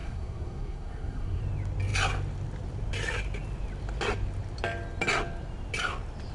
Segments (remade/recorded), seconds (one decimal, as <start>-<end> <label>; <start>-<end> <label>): 0.0-1.4 remade; 1.4-6.3 recorded

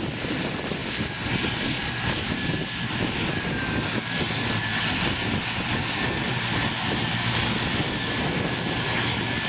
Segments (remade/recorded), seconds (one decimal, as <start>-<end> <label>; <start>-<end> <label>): 0.0-9.5 recorded

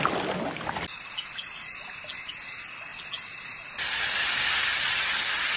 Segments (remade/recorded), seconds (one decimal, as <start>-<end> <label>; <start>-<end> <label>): 0.0-5.6 recorded

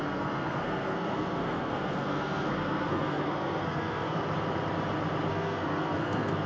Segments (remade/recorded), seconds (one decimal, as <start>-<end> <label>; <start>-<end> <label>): 0.0-4.2 remade; 4.2-5.3 recorded; 5.3-6.5 remade

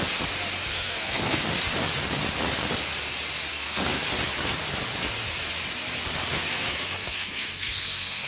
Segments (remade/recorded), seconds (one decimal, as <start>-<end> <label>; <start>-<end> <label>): 0.0-0.7 recorded; 0.7-1.4 remade; 1.4-3.5 recorded; 3.5-4.0 remade; 4.0-6.5 recorded; 6.5-8.3 remade

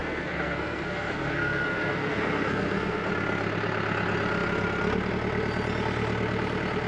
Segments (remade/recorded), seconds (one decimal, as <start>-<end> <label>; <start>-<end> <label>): 0.0-3.1 remade; 3.1-6.9 recorded